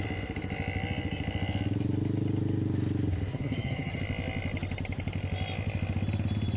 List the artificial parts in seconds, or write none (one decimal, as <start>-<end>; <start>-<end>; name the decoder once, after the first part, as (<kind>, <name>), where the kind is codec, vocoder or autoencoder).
3.3-4.0 (vocoder, HiFi-GAN)